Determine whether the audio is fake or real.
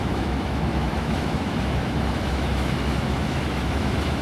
fake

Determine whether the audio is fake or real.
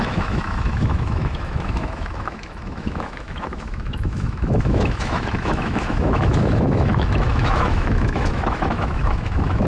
fake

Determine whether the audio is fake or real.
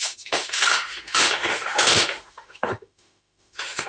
fake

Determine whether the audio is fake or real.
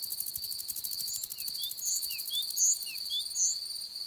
real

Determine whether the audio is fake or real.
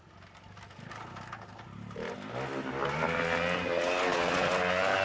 real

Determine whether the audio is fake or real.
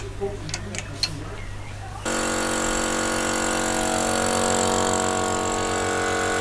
real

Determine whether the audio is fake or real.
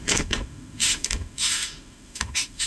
fake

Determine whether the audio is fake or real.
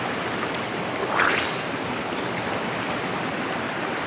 real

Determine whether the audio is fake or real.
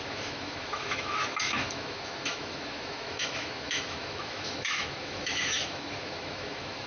fake